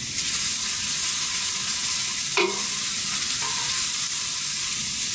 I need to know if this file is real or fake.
fake